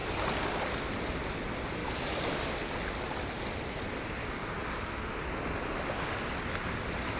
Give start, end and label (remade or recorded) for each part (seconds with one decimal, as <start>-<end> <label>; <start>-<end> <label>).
0.0-4.2 recorded; 4.2-4.8 remade; 4.8-7.2 recorded